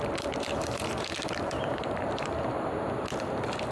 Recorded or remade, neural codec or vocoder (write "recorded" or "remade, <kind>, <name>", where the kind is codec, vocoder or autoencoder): remade, vocoder, BigVGAN v2